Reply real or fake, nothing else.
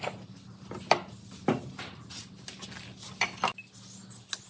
real